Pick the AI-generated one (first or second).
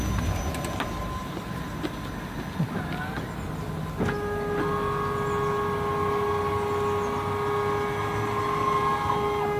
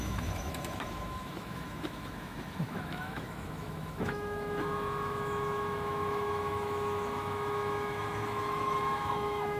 second